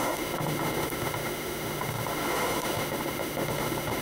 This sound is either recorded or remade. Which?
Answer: remade